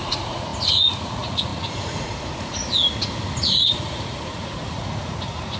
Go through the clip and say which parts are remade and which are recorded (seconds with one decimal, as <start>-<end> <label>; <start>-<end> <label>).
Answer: 0.0-2.6 remade; 2.6-3.4 recorded; 3.4-5.6 remade